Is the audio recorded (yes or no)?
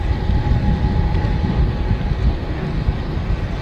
yes